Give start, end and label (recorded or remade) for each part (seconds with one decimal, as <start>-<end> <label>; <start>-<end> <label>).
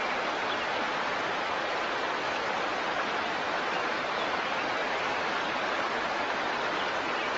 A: 0.0-7.4 recorded